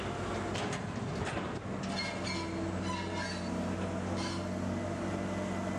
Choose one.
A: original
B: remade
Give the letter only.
A